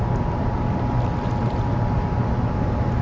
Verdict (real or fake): real